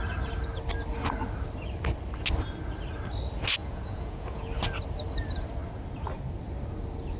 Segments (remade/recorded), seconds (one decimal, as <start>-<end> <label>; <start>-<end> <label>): 0.0-3.6 recorded; 3.6-4.5 remade; 4.5-7.2 recorded